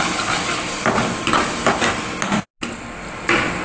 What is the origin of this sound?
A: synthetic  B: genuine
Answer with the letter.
B